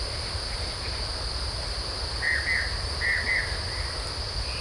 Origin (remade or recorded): recorded